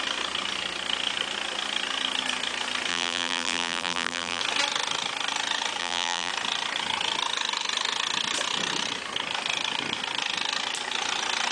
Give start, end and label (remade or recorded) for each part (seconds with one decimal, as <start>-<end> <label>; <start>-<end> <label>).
0.0-2.9 recorded; 2.9-4.4 remade; 4.4-5.8 recorded; 5.8-6.3 remade; 6.3-11.5 recorded